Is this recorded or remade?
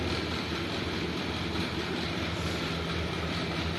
remade